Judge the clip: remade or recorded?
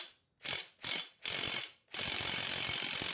recorded